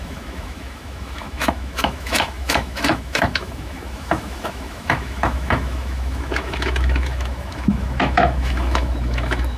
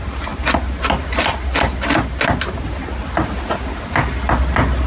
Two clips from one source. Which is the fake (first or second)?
first